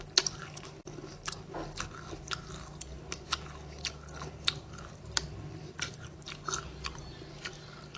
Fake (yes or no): no